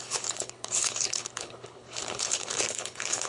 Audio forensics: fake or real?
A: fake